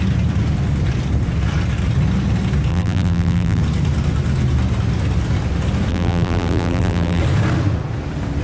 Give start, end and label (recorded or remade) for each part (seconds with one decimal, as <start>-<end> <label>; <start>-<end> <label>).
0.0-2.7 recorded; 2.7-3.6 remade; 3.6-5.9 recorded; 5.9-7.2 remade; 7.2-8.4 recorded